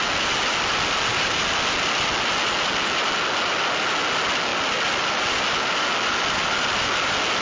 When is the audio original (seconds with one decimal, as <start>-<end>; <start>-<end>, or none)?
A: 0.0-4.5; 5.0-7.4